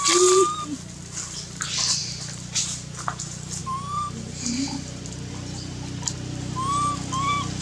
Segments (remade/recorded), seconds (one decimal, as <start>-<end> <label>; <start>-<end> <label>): 0.0-7.6 recorded